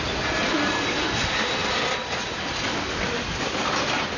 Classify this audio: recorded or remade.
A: recorded